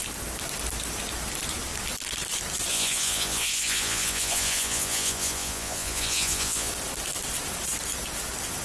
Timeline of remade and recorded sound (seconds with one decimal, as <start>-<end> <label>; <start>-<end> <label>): 0.0-2.7 recorded; 2.7-6.7 remade; 6.7-8.6 recorded